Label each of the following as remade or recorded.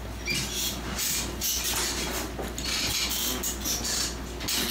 recorded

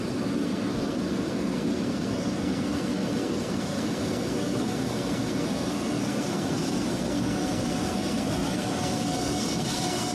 remade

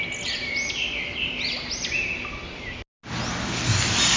recorded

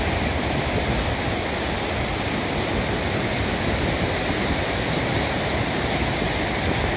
recorded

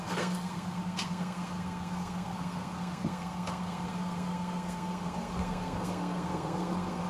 remade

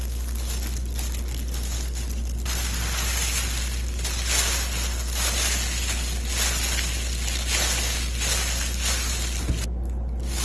recorded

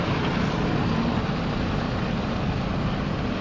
recorded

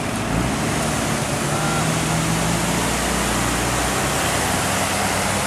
recorded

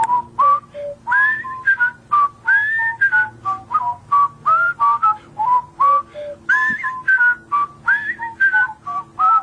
recorded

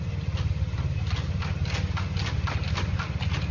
recorded